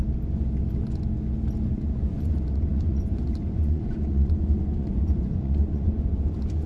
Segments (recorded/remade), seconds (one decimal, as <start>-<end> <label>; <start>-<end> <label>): 0.0-1.7 recorded; 1.7-6.7 remade